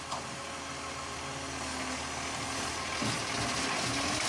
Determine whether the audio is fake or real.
real